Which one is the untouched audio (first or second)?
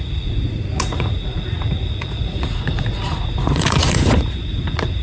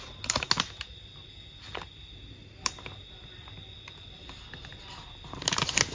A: second